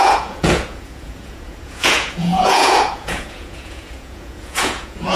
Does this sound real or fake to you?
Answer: fake